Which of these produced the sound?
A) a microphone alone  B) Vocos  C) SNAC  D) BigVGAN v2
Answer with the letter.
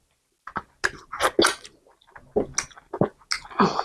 A